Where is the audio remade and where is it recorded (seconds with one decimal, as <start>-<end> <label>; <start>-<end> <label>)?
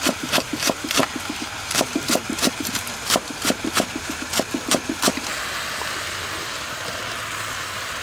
0.0-1.0 remade; 1.0-1.6 recorded; 1.6-4.3 remade; 4.3-7.5 recorded; 7.5-8.0 remade